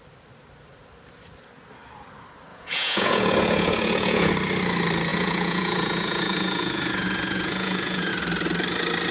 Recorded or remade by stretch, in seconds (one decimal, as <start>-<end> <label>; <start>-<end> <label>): 0.0-2.5 recorded; 2.5-4.3 remade; 4.3-5.1 recorded; 5.1-8.1 remade; 8.1-9.1 recorded